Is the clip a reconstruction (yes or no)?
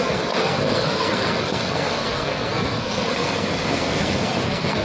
yes